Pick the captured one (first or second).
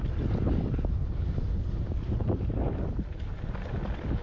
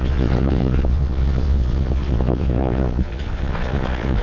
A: first